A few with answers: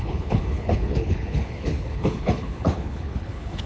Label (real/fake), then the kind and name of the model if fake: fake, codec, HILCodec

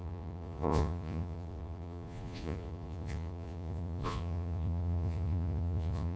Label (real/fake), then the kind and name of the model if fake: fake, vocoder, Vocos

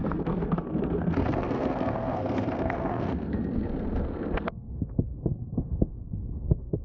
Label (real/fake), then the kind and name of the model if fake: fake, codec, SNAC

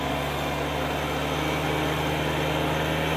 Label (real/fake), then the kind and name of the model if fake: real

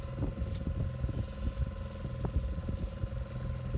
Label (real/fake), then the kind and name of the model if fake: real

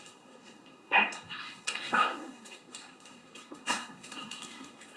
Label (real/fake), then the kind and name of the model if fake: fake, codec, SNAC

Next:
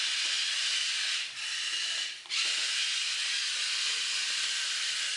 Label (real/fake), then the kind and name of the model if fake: real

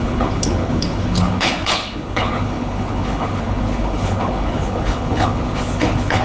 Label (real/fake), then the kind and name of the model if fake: fake, codec, HILCodec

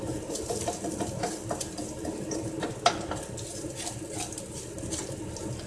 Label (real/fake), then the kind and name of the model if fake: real